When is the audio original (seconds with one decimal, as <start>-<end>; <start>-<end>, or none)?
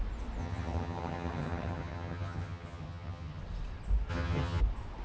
0.0-0.4; 3.4-4.1; 4.6-5.0